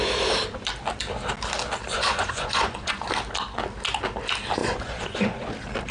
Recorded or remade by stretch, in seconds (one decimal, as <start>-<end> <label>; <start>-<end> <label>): 0.0-1.9 recorded; 1.9-3.1 remade; 3.1-4.6 recorded; 4.6-5.5 remade; 5.5-5.9 recorded